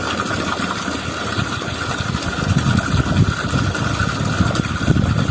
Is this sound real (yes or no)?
yes